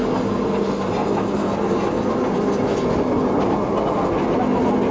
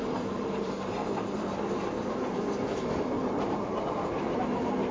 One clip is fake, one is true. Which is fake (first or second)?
second